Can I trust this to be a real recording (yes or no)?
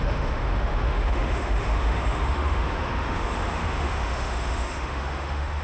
no